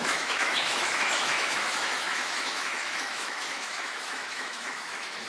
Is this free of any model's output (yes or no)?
no